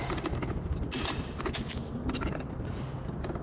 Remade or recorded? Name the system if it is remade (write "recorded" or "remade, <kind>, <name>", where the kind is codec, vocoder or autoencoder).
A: recorded